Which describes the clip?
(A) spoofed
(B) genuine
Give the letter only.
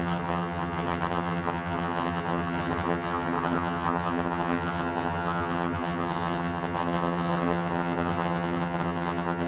A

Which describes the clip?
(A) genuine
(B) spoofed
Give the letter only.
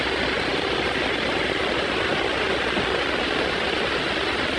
A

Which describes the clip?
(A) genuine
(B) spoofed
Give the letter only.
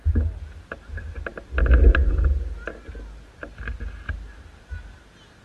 A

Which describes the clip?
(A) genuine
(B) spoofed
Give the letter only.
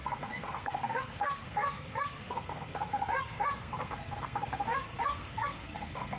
B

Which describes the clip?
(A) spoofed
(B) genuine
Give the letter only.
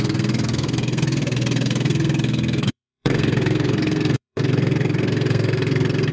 A